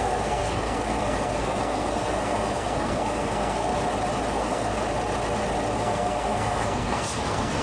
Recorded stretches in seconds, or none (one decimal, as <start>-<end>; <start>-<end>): 3.7-4.3; 4.7-5.8